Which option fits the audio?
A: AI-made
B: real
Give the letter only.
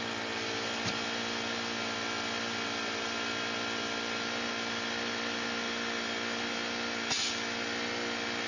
B